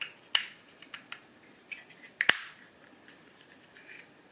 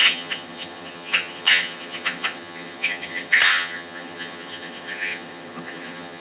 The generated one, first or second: second